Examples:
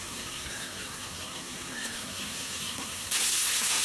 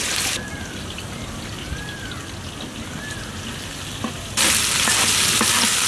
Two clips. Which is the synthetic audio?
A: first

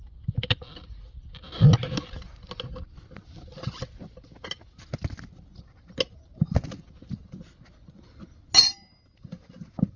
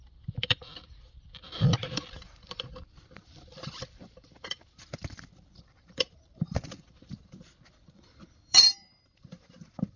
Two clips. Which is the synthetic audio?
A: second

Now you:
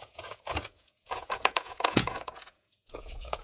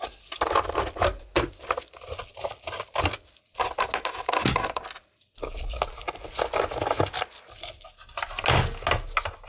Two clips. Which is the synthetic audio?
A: first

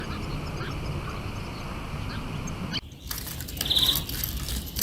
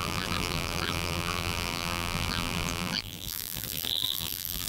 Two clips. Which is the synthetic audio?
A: second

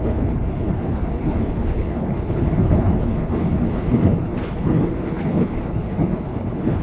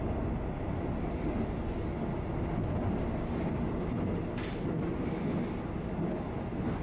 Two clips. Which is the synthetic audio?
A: first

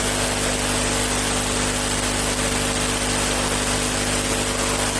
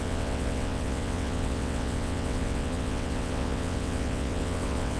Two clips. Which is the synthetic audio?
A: second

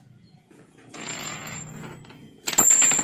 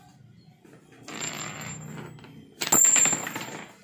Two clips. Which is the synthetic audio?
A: first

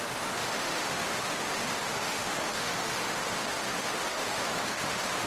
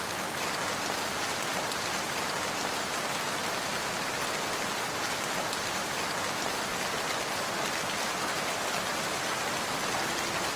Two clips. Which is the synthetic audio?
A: first